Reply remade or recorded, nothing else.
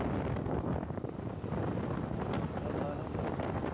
recorded